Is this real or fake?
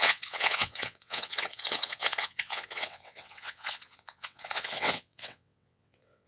fake